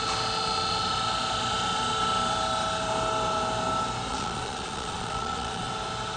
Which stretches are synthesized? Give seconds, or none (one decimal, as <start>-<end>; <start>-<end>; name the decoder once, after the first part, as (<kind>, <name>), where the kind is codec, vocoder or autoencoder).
4.1-5.7 (vocoder, Vocos)